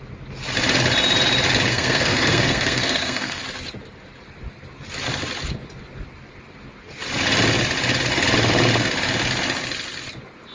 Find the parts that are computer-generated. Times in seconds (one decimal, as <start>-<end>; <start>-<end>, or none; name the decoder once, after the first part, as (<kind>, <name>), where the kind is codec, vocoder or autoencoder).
1.7-3.4 (codec, SNAC)